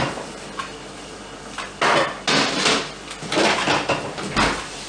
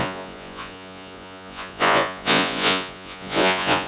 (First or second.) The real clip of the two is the first